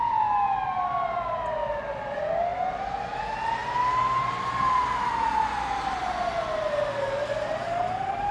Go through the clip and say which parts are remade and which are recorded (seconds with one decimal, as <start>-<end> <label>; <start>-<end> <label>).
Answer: 0.0-8.3 recorded